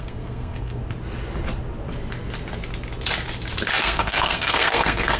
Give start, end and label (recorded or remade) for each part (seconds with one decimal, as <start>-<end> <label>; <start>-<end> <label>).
0.0-0.8 remade; 0.8-3.8 recorded; 3.8-5.2 remade